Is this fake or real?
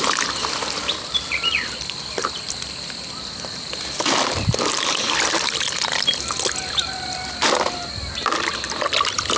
real